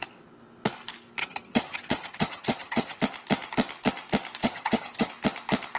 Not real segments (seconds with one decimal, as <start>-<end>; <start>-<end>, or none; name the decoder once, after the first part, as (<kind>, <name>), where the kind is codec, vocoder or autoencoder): 1.2-3.0 (vocoder, HiFi-GAN); 4.4-5.1